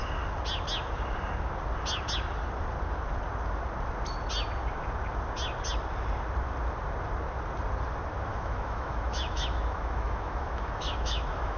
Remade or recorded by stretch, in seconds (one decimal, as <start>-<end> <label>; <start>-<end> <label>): 0.0-8.3 recorded; 8.3-11.6 remade